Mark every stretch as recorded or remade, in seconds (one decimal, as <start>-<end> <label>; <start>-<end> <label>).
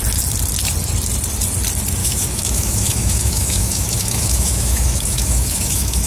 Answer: 0.0-2.0 recorded; 2.0-6.1 remade